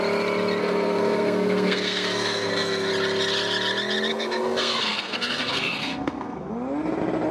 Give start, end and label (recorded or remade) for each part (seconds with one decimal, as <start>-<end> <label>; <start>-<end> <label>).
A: 0.0-0.6 recorded; 0.6-2.9 remade; 2.9-4.1 recorded; 4.1-6.5 remade; 6.5-7.3 recorded